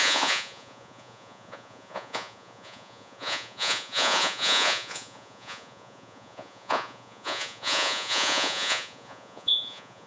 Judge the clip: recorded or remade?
remade